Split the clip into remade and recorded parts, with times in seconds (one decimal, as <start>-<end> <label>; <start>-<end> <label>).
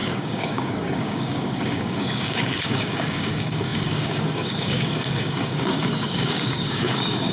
0.0-7.3 remade